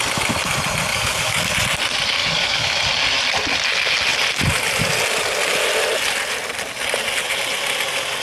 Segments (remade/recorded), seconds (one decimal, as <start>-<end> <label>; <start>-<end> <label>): 0.0-0.9 recorded; 0.9-1.5 remade; 1.5-2.2 recorded; 2.2-2.8 remade; 2.8-8.2 recorded